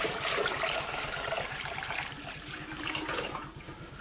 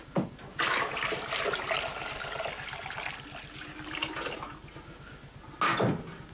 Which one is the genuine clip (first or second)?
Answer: second